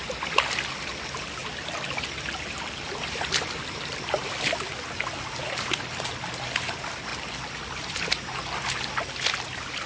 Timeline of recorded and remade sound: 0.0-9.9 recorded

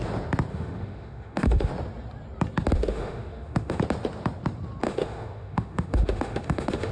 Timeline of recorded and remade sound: 0.0-0.5 recorded; 0.5-1.7 remade; 1.7-2.8 recorded; 2.8-3.8 remade; 3.8-4.8 recorded; 4.8-6.9 remade

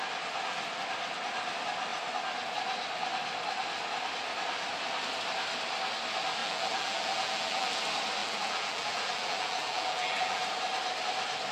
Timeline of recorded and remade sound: 0.0-6.4 recorded; 6.4-7.8 remade; 7.8-8.2 recorded; 8.2-10.4 remade; 10.4-11.5 recorded